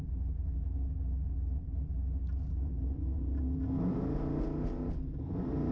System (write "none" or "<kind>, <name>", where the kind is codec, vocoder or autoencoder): none